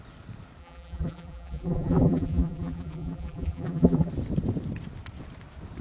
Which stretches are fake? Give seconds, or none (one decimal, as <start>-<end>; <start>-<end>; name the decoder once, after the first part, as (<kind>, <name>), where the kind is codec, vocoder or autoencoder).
0.6-4.1 (vocoder, BigVGAN v2)

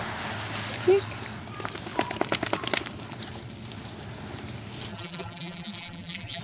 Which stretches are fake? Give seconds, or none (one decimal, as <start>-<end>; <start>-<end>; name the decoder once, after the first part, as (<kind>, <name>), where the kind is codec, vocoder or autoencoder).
4.9-6.4 (vocoder, BigVGAN v2)

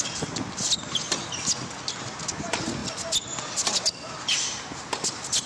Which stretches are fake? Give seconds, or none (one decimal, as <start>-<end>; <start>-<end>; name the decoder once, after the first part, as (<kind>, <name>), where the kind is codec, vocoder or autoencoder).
none

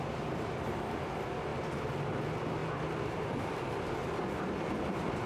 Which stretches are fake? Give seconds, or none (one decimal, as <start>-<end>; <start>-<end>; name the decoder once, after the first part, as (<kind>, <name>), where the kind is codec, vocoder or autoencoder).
0.0-5.3 (vocoder, BigVGAN v2)

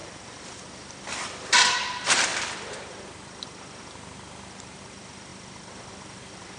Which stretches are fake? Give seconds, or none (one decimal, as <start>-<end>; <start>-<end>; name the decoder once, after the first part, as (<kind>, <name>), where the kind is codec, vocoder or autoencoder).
0.0-0.6 (vocoder, BigVGAN v2)

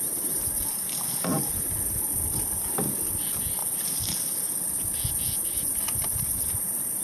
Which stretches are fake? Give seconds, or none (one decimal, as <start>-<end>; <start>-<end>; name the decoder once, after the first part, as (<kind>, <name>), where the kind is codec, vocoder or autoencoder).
none

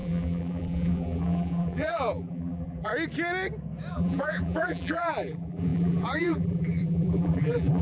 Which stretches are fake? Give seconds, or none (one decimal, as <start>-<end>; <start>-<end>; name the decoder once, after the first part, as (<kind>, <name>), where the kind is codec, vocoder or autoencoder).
0.0-2.9 (vocoder, BigVGAN v2); 3.9-7.8

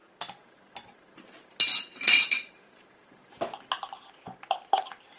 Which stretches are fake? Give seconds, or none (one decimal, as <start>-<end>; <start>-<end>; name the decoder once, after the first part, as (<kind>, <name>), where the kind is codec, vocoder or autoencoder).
1.7-3.2 (vocoder, BigVGAN v2)